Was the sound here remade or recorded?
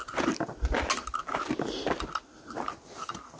recorded